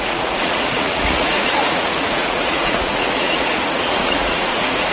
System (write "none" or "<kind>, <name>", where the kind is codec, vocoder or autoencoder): vocoder, Vocos